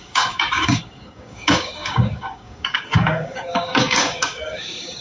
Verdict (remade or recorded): remade